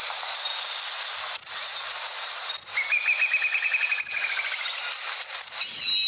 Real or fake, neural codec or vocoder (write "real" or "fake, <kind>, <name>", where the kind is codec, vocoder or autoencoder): real